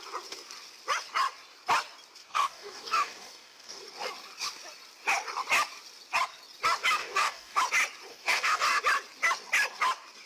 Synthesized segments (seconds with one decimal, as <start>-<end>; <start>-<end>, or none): 2.2-3.8; 7.0-7.6; 8.1-8.8